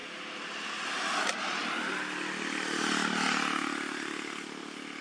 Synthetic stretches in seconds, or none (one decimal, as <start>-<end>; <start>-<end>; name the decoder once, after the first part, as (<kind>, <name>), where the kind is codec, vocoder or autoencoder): none